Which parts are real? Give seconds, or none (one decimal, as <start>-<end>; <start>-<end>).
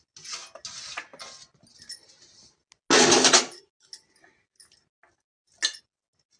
0.0-6.4